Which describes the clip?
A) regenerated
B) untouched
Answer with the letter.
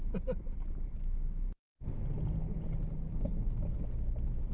B